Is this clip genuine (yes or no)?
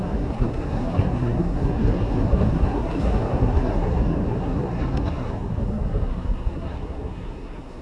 no